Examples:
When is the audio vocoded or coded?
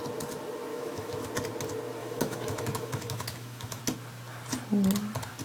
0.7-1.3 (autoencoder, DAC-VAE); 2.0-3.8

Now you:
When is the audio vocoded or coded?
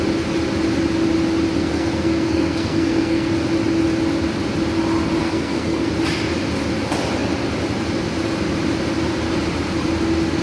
1.6-3.3 (codec, SNAC); 5.2-5.9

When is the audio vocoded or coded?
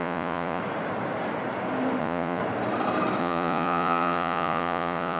0.0-0.6 (vocoder, Vocos); 2.0-2.4; 3.2-5.2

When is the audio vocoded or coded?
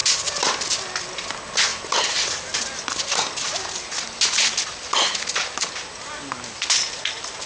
none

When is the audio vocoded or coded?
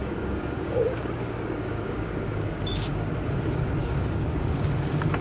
0.0-3.1 (codec, DAC); 3.8-4.7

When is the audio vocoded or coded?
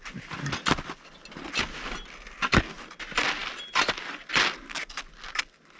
none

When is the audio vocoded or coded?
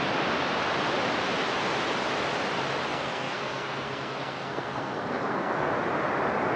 2.9-5.7 (codec, SNAC)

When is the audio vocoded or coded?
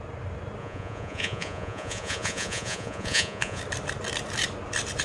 0.6-3.6 (vocoder, Vocos)